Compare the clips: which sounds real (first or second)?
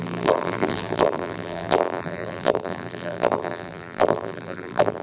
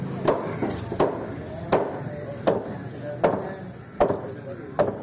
second